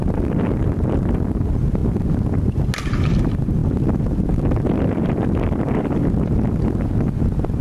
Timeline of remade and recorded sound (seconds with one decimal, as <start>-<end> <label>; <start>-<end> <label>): 0.0-7.6 recorded